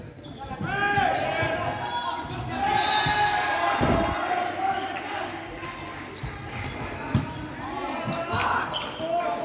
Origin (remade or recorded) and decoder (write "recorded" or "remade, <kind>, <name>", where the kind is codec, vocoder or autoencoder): recorded